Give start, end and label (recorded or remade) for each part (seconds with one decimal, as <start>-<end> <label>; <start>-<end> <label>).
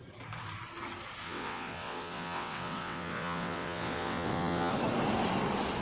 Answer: 0.0-1.2 recorded; 1.2-4.7 remade; 4.7-5.8 recorded